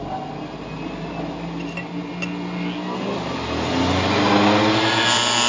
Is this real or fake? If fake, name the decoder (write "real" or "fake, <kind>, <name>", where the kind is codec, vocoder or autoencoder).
real